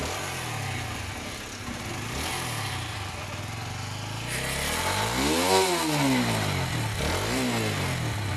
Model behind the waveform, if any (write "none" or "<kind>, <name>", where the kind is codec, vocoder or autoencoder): none